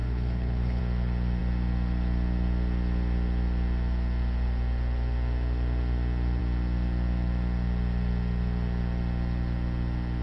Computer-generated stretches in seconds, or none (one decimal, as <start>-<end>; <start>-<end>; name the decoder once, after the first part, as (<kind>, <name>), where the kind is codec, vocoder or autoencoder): 0.0-0.8 (codec, HILCodec)